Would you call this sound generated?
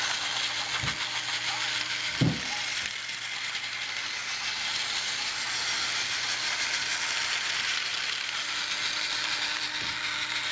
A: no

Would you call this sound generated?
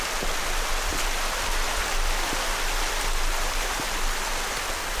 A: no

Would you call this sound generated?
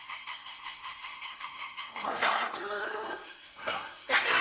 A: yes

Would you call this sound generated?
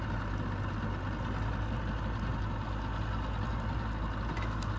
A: no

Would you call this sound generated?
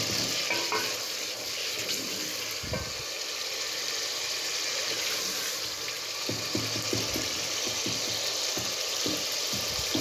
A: no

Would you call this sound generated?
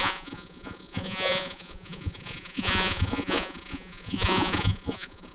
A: yes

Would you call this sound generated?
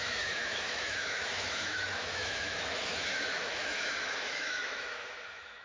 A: yes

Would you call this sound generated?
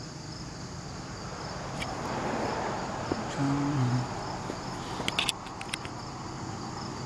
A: no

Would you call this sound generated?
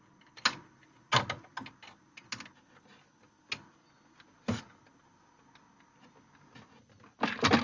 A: no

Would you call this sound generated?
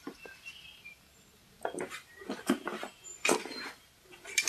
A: no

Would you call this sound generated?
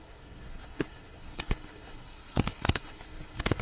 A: yes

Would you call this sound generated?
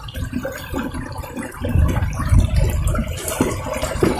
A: yes